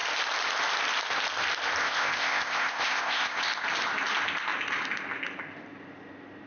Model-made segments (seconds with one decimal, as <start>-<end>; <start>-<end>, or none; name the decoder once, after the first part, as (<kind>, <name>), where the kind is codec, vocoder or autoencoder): 1.8-3.4 (codec, ZipCodec)